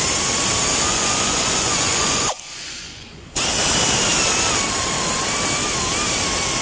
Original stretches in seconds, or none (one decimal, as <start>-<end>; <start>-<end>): 0.0-0.9; 3.4-6.6